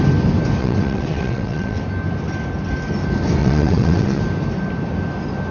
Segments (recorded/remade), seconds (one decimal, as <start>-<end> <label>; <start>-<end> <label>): 0.0-0.6 recorded; 0.6-1.8 remade; 1.8-3.4 recorded; 3.4-4.2 remade; 4.2-5.5 recorded